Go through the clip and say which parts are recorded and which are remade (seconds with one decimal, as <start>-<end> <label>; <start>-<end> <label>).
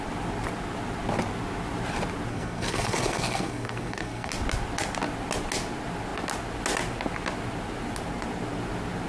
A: 0.0-2.3 recorded; 2.3-4.3 remade; 4.3-9.1 recorded